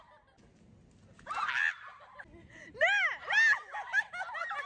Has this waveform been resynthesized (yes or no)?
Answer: no